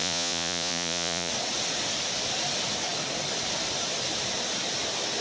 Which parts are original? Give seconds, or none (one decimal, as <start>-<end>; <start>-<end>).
1.3-5.2